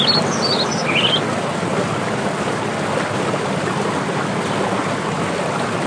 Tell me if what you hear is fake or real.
real